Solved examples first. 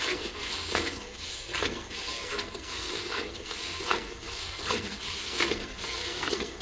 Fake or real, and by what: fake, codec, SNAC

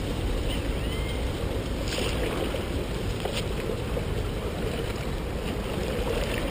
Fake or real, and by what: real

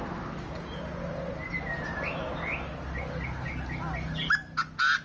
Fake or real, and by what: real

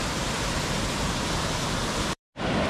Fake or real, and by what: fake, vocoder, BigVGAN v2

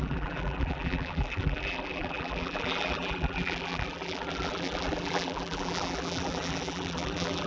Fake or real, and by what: fake, vocoder, BigVGAN v2